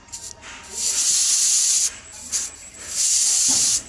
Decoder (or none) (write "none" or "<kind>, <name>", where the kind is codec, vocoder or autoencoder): none